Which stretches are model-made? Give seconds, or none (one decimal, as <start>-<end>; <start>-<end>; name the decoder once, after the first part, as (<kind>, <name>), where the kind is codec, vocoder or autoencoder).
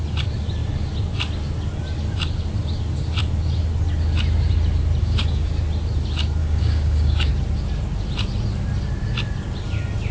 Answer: 5.0-5.5 (codec, DAC); 6.4-7.3